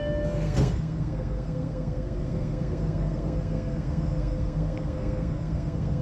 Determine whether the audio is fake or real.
fake